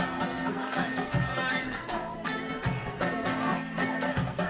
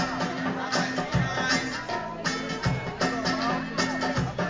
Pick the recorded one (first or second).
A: second